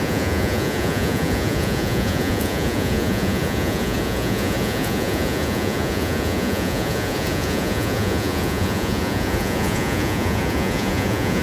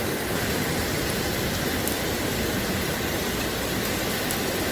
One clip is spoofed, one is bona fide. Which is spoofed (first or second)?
first